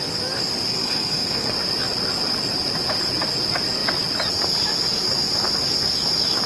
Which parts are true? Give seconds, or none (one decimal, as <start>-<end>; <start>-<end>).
0.0-0.7; 1.5-6.5